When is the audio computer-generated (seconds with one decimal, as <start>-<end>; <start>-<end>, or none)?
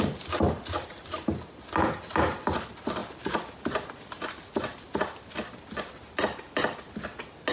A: none